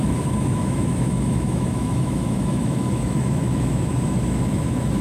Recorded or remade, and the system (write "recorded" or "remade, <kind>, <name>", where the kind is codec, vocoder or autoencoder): remade, autoencoder, DAC-VAE